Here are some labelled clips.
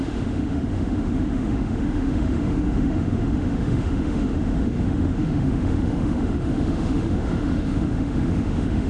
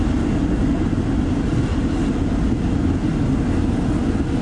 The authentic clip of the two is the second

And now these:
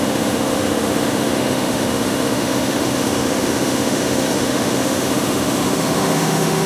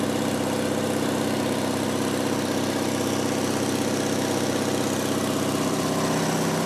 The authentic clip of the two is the second